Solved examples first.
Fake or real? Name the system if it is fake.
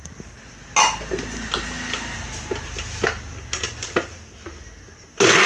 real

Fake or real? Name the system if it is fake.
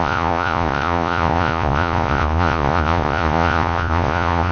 fake, vocoder, Vocos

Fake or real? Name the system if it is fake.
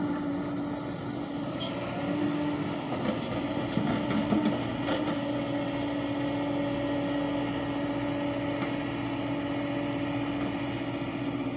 real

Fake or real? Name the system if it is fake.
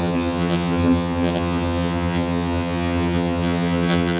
fake, vocoder, HiFi-GAN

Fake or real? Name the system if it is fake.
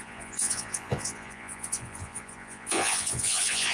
fake, vocoder, Vocos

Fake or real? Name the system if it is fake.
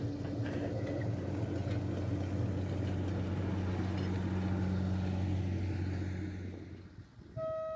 real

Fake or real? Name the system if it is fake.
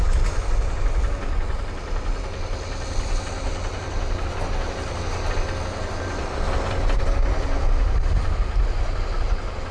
real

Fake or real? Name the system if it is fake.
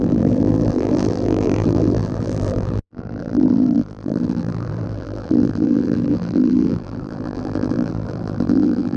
fake, vocoder, BigVGAN v2